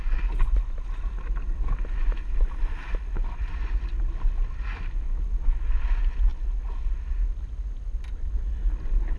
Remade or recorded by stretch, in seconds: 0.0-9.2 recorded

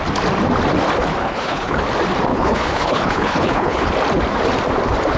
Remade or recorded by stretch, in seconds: 0.0-1.2 recorded; 1.2-1.8 remade; 1.8-2.3 recorded; 2.3-3.9 remade; 3.9-5.2 recorded